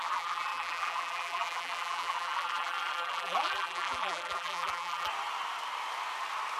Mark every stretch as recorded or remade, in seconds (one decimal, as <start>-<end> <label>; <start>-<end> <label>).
0.0-5.1 remade; 5.1-6.6 recorded